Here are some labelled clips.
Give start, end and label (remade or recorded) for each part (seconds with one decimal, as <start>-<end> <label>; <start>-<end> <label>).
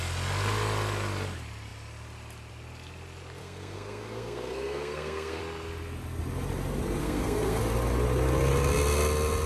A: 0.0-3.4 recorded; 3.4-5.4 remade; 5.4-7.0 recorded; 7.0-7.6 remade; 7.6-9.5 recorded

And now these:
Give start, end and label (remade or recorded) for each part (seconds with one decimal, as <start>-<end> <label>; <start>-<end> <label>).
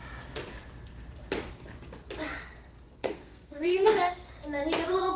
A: 0.0-3.0 recorded; 3.0-4.1 remade; 4.1-5.2 recorded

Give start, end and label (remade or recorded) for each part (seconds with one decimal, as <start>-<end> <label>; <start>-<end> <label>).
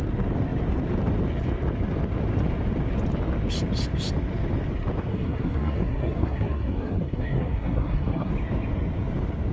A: 0.0-5.1 recorded; 5.1-8.3 remade; 8.3-9.5 recorded